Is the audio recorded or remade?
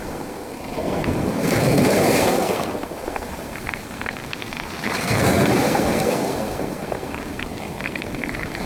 remade